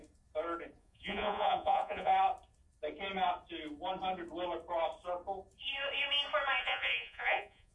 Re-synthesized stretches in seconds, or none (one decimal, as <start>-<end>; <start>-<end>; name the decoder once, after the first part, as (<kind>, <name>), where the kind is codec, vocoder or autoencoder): 0.8-2.1 (vocoder, Vocos); 6.6-7.7